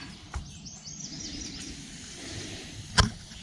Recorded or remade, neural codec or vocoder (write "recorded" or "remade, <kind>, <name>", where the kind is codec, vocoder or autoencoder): recorded